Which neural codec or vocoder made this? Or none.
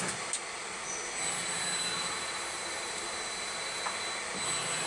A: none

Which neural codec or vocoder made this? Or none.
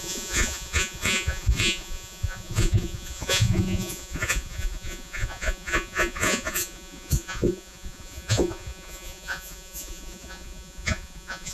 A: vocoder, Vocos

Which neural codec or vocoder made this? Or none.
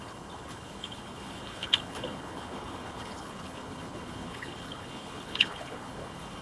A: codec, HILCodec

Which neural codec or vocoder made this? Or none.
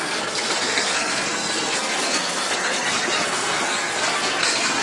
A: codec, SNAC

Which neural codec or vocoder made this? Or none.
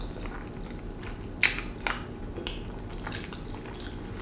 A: none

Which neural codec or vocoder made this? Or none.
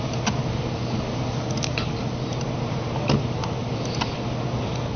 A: none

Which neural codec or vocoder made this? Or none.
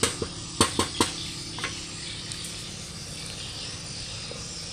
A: none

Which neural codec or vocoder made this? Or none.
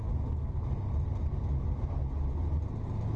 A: none